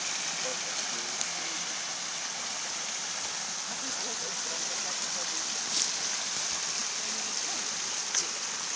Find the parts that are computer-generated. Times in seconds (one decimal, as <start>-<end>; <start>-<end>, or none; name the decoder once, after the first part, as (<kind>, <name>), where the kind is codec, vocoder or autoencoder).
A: none